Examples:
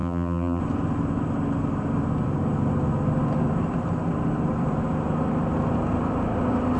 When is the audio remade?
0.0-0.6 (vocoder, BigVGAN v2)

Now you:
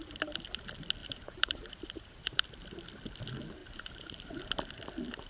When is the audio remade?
1.0-2.4 (vocoder, BigVGAN v2); 3.6-4.3

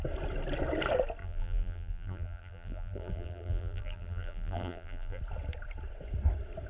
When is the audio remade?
1.2-5.2 (vocoder, BigVGAN v2)

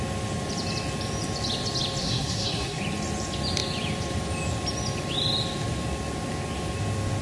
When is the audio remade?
2.0-2.8 (codec, SNAC)

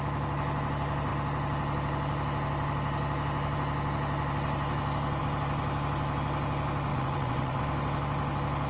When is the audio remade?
6.9-7.6 (vocoder, WaveNeXt)

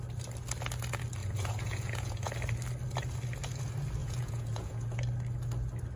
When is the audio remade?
1.2-2.3 (vocoder, Vocos); 4.0-5.0